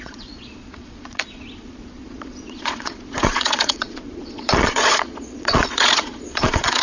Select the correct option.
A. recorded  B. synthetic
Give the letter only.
B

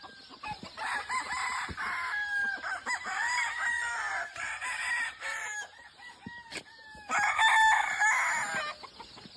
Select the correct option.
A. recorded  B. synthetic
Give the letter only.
A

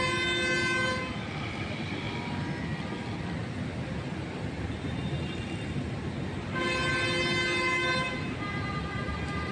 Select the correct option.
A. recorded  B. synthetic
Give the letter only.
A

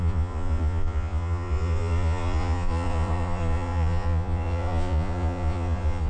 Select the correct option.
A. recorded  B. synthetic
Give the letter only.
B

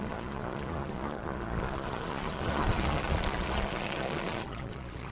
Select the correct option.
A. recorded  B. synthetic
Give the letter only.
B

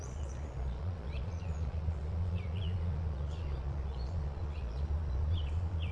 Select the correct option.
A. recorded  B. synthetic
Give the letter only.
B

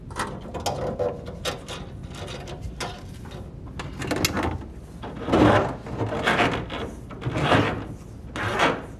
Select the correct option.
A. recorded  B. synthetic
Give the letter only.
A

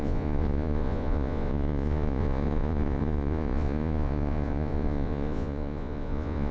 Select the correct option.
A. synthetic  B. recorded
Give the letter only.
A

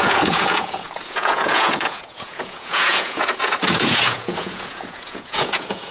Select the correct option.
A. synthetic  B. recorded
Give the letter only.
A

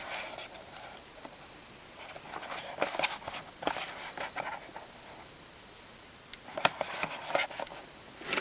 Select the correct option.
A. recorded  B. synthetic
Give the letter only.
A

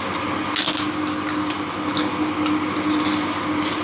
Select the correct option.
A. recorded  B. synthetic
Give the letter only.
A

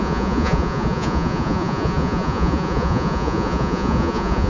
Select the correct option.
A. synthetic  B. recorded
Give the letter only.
A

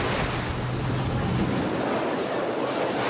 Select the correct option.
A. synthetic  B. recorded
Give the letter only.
B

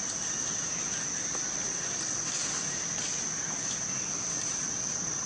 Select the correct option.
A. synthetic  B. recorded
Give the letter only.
B